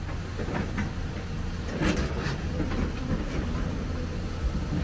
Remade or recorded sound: remade